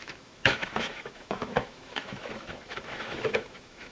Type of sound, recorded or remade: remade